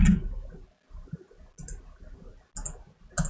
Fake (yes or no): no